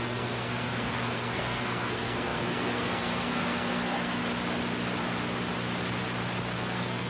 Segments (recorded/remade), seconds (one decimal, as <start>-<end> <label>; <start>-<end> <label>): 0.0-4.2 remade; 4.2-6.6 recorded; 6.6-7.1 remade